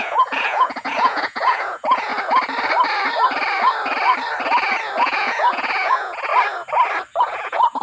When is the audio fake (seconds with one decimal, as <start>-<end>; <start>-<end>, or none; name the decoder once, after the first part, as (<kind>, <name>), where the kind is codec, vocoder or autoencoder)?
0.0-2.1 (vocoder, Vocos); 5.0-6.3; 7.2-7.8